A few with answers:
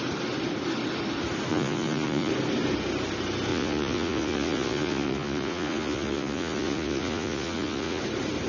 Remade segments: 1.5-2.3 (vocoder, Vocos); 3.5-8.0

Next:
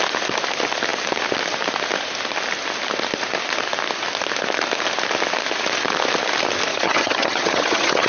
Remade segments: 6.7-8.1 (vocoder, HiFi-GAN)